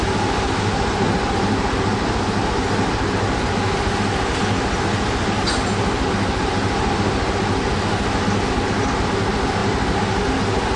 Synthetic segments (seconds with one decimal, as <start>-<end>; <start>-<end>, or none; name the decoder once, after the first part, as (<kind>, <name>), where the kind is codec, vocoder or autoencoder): 9.6-10.2 (vocoder, BigVGAN v2)